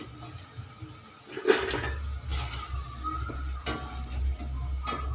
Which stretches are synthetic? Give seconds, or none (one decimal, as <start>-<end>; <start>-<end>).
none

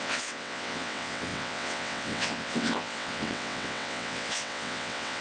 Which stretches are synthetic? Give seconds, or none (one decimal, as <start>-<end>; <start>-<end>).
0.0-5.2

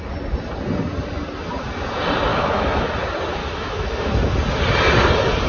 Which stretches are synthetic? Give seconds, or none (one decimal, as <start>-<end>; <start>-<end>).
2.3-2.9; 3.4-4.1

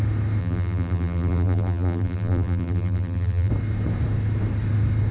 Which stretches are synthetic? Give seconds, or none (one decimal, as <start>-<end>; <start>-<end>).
0.4-3.5

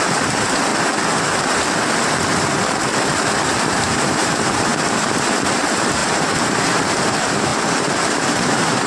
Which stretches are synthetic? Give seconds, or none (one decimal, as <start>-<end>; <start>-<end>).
0.0-0.7; 3.6-4.7; 5.5-7.5; 8.3-8.9

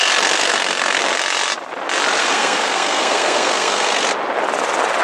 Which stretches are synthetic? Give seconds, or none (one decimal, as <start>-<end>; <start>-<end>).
0.4-1.0; 2.2-3.9